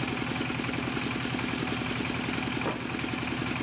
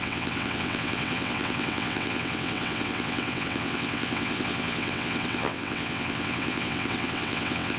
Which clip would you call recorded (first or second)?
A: first